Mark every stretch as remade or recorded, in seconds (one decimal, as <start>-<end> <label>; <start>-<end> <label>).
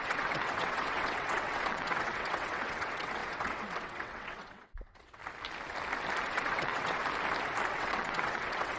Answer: 0.0-5.2 remade; 5.2-6.2 recorded; 6.2-7.0 remade; 7.0-7.7 recorded; 7.7-8.8 remade